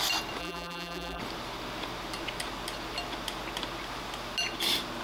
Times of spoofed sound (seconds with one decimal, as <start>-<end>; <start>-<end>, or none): 0.4-1.2

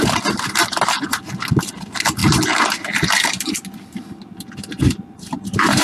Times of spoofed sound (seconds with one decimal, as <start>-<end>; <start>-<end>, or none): 0.0-0.6; 1.7-2.2; 4.7-5.8

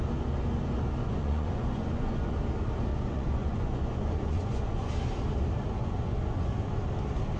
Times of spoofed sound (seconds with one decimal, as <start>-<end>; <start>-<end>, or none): 1.0-2.4; 2.9-4.9; 5.8-6.7